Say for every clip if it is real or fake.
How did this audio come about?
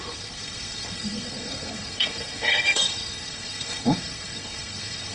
fake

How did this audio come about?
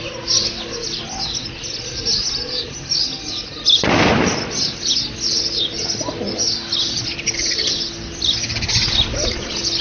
real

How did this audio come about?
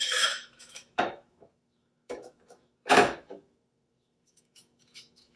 fake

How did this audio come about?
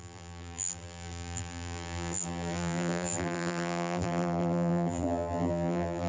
fake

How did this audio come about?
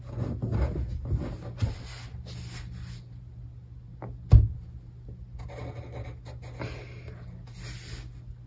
real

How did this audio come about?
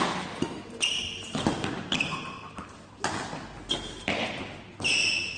real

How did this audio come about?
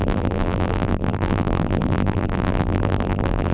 fake